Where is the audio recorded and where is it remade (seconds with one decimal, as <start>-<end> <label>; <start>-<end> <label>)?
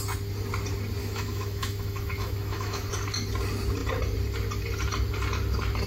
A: 0.0-1.0 recorded; 1.0-2.9 remade; 2.9-5.9 recorded